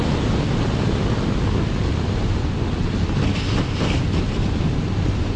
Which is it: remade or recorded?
recorded